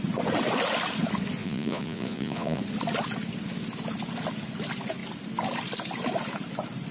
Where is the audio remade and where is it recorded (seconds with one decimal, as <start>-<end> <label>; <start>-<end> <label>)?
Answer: 0.0-1.4 recorded; 1.4-2.6 remade; 2.6-6.9 recorded

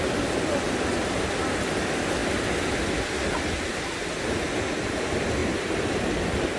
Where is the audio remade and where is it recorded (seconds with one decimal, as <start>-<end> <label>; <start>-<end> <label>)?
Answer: 0.0-6.6 recorded

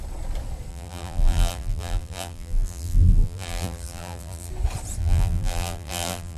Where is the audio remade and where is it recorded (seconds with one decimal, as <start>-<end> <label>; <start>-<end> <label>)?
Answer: 0.0-0.7 recorded; 0.7-4.5 remade; 4.5-5.0 recorded; 5.0-6.4 remade